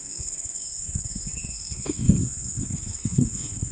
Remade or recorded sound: remade